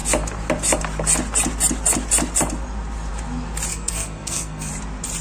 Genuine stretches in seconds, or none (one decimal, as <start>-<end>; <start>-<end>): 0.0-3.7; 4.7-5.2